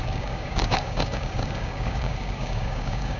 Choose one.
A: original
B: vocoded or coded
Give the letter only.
B